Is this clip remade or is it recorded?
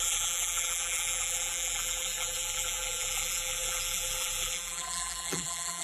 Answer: remade